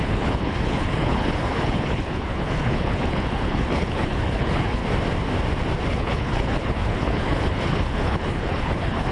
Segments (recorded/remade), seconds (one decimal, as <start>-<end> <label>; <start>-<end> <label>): 0.0-4.8 remade; 4.8-5.9 recorded; 5.9-9.1 remade

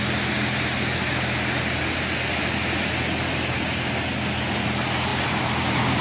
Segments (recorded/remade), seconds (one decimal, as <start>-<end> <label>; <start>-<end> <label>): 0.0-6.0 recorded

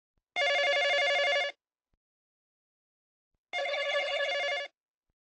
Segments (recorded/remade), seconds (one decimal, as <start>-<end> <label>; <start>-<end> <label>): 0.0-3.6 recorded; 3.6-4.3 remade; 4.3-5.2 recorded